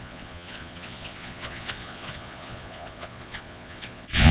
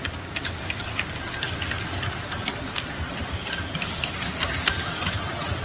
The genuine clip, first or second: second